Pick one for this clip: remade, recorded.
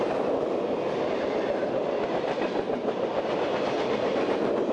recorded